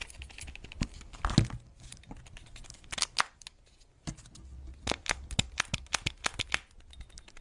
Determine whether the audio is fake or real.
real